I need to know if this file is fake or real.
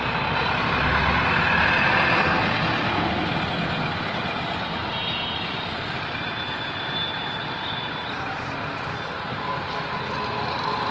real